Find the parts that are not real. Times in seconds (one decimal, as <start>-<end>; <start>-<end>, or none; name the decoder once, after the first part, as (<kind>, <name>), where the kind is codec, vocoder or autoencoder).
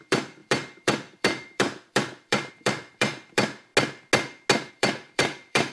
0.0-3.7 (vocoder, BigVGAN v2); 4.7-5.7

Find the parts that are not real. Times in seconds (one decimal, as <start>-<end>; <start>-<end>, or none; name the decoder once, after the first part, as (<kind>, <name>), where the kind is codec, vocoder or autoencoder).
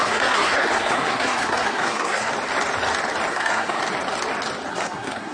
0.0-2.3 (codec, SNAC); 3.3-3.8; 4.7-5.3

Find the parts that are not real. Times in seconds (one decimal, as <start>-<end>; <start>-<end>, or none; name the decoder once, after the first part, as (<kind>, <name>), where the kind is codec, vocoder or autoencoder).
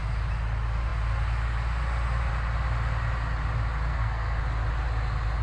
3.9-4.4 (codec, SNAC)